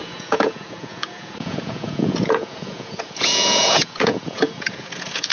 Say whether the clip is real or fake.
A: fake